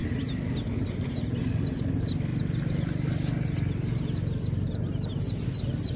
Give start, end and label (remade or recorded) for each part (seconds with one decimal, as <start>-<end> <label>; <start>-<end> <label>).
0.0-6.0 recorded